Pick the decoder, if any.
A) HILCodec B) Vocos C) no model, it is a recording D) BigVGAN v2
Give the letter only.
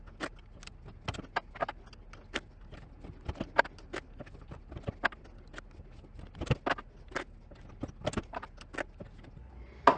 C